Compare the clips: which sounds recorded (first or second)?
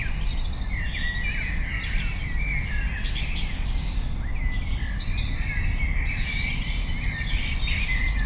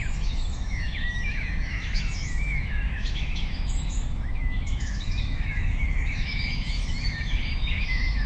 first